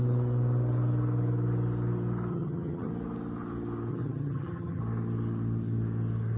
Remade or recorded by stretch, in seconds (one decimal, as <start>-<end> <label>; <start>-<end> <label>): 0.0-2.3 recorded; 2.3-2.9 remade; 2.9-3.9 recorded; 3.9-4.8 remade; 4.8-6.4 recorded